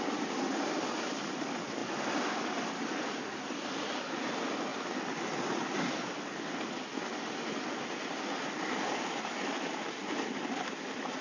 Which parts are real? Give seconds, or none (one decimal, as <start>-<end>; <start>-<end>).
0.0-1.8; 4.1-4.7; 5.2-11.2